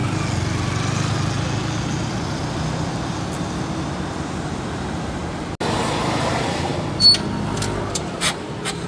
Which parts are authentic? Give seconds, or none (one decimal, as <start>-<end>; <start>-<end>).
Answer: 0.0-4.2; 5.2-6.2; 6.7-8.0